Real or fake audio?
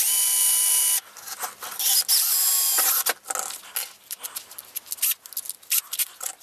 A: real